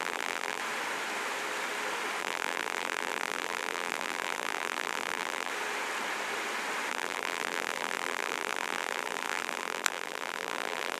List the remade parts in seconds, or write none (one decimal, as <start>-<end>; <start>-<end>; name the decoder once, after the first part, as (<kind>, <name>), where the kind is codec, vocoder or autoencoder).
0.0-0.6 (vocoder, BigVGAN v2); 2.2-5.5; 6.9-11.0